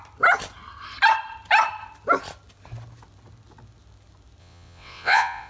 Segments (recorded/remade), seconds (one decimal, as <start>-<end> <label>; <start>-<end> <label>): 0.0-4.4 recorded; 4.4-5.5 remade